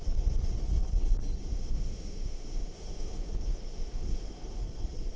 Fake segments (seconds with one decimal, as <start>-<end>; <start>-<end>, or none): 1.5-4.6